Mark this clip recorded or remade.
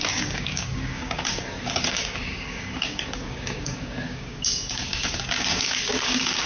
remade